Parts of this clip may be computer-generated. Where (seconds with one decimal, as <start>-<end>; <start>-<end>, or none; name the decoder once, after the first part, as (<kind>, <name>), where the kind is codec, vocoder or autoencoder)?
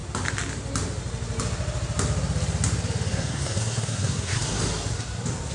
3.1-4.6 (codec, SNAC)